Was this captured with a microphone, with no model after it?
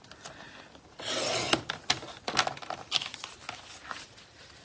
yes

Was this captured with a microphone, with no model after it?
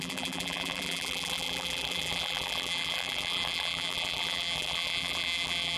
no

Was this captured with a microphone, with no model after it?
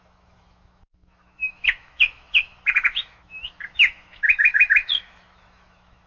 no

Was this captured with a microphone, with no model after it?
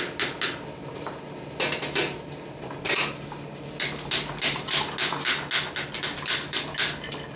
yes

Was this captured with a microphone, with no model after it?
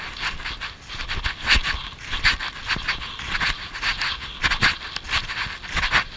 yes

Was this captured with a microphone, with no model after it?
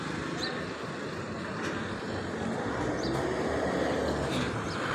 yes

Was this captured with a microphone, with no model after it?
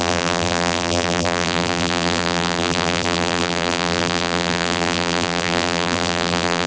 no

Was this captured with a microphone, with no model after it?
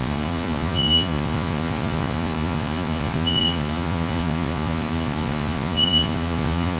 no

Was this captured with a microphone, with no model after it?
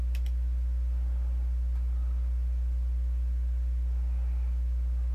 yes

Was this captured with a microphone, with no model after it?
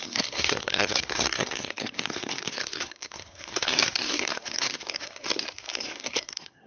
no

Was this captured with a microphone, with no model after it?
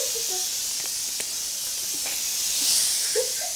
yes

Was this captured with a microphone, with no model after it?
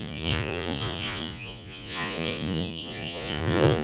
no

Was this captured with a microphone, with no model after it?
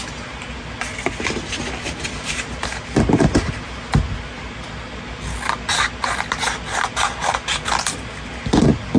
yes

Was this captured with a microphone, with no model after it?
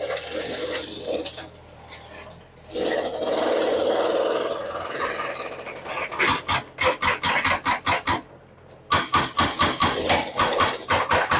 yes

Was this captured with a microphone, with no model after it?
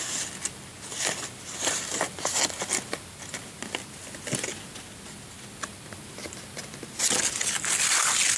yes